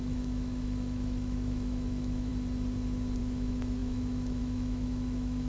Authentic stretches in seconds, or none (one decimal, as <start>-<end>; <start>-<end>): 2.3-3.2